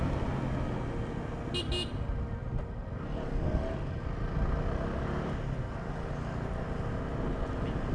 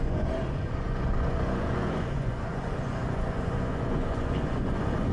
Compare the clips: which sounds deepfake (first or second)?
second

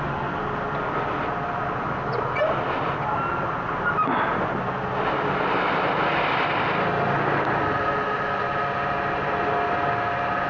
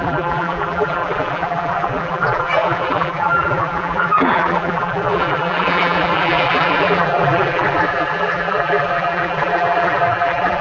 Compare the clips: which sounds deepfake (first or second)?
second